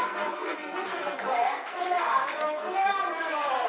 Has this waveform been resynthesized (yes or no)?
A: yes